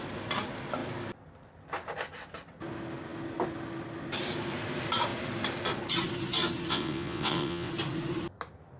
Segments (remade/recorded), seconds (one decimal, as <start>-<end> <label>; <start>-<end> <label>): 0.0-6.7 recorded; 6.7-7.7 remade; 7.7-8.8 recorded